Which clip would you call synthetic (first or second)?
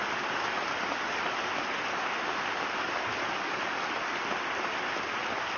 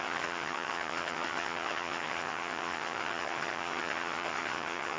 second